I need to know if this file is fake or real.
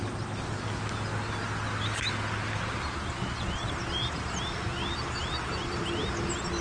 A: fake